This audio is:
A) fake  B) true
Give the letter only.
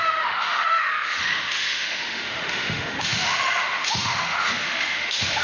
A